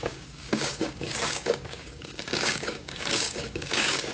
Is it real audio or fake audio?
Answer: fake